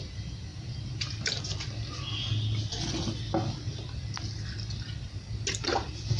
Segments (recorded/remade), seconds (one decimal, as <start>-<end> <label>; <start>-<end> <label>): 0.0-0.5 recorded; 0.5-1.4 remade; 1.4-6.2 recorded